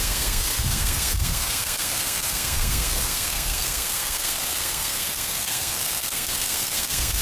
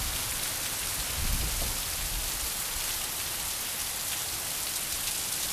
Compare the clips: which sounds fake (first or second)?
first